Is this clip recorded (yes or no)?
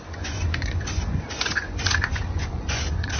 no